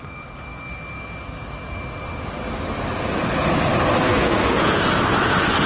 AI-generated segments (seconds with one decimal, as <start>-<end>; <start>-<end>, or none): 4.1-4.8